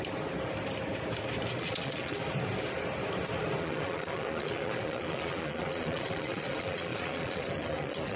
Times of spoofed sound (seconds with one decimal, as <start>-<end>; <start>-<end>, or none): 1.6-2.2; 3.6-8.2